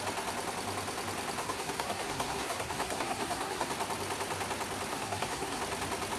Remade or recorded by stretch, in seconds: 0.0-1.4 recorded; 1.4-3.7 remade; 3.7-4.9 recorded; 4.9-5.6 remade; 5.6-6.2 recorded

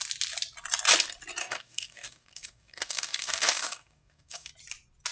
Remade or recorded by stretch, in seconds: 0.0-1.4 recorded; 1.4-4.5 remade; 4.5-5.1 recorded

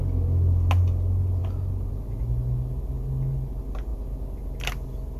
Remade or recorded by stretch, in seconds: 0.0-5.2 recorded

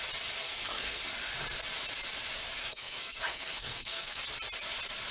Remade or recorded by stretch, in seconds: 0.0-0.4 recorded; 0.4-1.0 remade; 1.0-2.6 recorded; 2.6-4.2 remade; 4.2-5.1 recorded

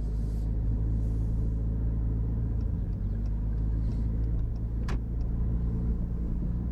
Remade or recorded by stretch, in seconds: 0.0-6.7 recorded